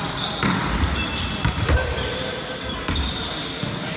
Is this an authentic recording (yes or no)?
yes